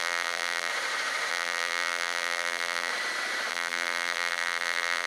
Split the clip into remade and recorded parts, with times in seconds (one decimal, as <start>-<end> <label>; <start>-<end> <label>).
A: 0.0-0.7 remade; 0.7-1.3 recorded; 1.3-2.9 remade; 2.9-3.5 recorded; 3.5-5.1 remade